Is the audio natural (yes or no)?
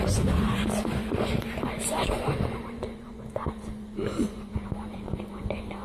no